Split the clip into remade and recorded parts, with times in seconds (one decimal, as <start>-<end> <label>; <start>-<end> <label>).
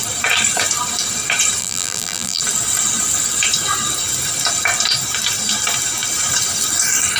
0.0-1.6 recorded; 1.6-2.4 remade; 2.4-7.2 recorded